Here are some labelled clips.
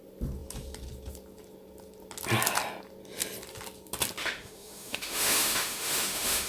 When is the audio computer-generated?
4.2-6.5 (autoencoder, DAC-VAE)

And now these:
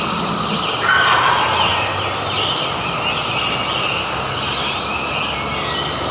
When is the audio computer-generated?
none